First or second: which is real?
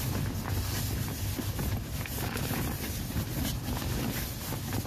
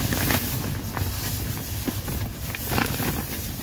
first